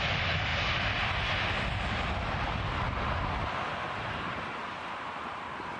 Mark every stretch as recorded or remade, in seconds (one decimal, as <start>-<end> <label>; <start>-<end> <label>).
0.0-0.5 remade; 0.5-4.0 recorded; 4.0-4.6 remade; 4.6-5.3 recorded; 5.3-5.8 remade